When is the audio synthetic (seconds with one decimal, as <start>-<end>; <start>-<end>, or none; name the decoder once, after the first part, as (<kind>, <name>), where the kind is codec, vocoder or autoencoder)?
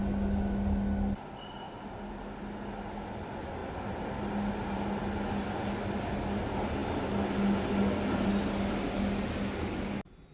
none